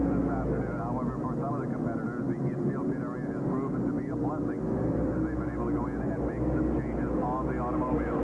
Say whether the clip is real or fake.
real